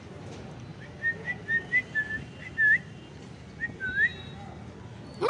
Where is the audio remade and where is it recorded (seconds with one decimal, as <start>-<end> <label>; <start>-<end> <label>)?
0.0-5.3 recorded